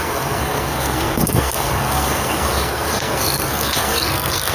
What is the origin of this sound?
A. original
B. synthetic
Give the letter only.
B